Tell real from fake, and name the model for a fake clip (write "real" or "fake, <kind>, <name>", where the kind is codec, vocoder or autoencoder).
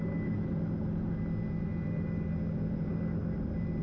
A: real